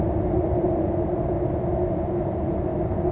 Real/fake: real